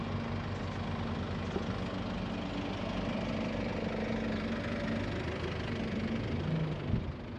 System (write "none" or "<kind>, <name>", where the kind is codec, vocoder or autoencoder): none